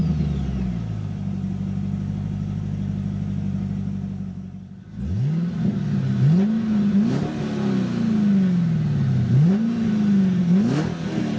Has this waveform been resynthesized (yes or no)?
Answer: no